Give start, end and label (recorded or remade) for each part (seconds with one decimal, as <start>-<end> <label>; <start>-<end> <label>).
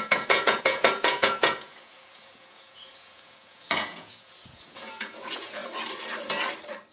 0.0-5.6 remade; 5.6-6.9 recorded